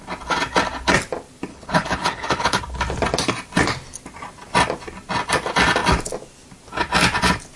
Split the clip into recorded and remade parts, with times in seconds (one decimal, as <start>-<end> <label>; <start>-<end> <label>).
0.0-1.5 recorded; 1.5-2.6 remade; 2.6-7.6 recorded